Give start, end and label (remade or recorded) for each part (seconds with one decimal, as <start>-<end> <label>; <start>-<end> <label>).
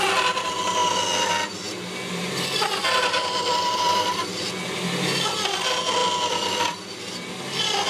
0.0-0.8 remade; 0.8-2.8 recorded; 2.8-7.9 remade